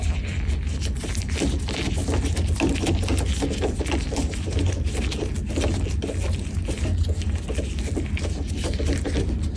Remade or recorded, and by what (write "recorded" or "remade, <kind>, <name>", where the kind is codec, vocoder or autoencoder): recorded